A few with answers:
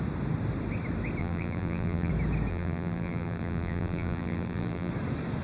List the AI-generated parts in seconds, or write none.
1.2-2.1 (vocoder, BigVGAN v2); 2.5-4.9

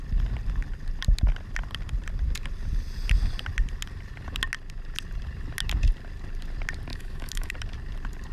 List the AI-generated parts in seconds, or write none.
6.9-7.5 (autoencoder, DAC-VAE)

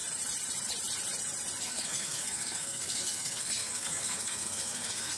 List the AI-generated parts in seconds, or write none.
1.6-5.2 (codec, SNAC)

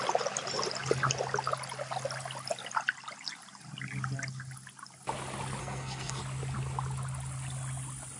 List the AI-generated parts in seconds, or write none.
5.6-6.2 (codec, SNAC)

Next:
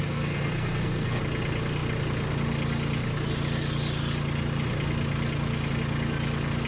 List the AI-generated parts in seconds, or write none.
0.0-1.2 (codec, SNAC)

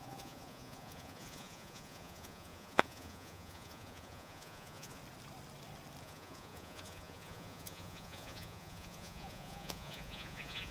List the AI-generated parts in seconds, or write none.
0.0-5.0 (vocoder, Vocos); 6.0-10.7